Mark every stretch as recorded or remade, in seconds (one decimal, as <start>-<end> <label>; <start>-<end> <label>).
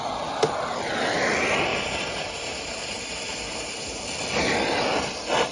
0.0-1.7 recorded; 1.7-4.0 remade; 4.0-5.5 recorded